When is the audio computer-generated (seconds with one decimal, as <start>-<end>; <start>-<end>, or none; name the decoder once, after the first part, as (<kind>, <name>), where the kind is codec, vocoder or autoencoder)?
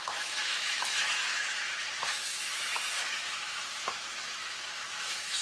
0.0-5.4 (autoencoder, DAC-VAE)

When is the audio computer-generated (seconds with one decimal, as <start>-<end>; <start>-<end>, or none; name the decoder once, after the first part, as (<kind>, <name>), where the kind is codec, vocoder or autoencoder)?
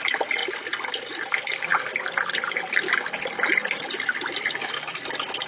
1.7-5.0 (vocoder, BigVGAN v2)